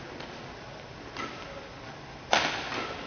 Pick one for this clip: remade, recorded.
recorded